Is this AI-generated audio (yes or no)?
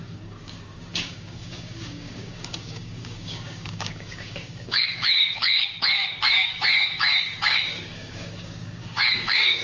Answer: yes